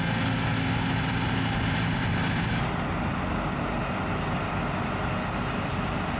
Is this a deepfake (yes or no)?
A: no